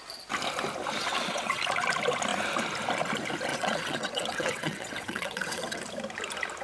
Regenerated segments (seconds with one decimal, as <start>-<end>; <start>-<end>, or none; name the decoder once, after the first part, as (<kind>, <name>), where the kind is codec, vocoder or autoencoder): 1.0-1.6 (vocoder, WaveNeXt); 3.5-5.8